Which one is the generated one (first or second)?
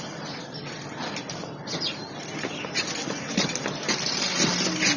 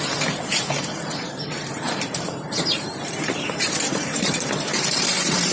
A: second